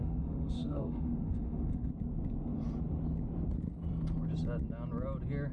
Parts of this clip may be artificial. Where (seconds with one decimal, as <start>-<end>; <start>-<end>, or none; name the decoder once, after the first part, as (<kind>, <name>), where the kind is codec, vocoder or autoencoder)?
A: 0.0-1.9 (autoencoder, DAC-VAE)